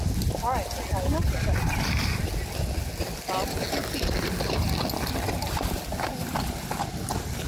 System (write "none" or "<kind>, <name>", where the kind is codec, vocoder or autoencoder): none